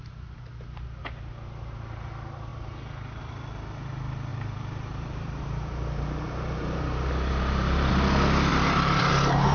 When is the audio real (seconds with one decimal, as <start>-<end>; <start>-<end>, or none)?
0.0-2.5; 3.2-4.3; 7.9-8.5; 9.1-9.5